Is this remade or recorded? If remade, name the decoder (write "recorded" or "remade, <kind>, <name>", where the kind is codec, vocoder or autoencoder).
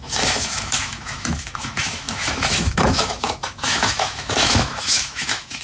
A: remade, autoencoder, DAC-VAE